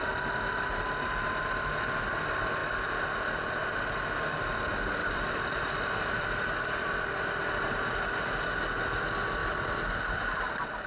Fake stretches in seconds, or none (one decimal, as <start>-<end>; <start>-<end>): 5.0-7.6; 9.4-10.9